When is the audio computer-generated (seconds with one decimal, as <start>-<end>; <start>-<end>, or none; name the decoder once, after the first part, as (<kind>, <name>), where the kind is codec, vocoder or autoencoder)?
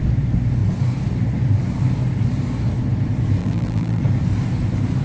3.4-4.0 (vocoder, BigVGAN v2)